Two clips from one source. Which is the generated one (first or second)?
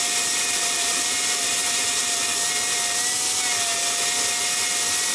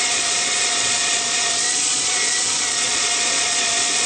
second